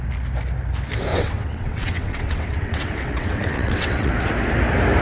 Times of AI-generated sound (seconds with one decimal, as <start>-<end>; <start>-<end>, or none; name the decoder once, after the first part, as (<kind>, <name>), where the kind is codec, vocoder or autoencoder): 1.1-4.1 (vocoder, WaveNeXt)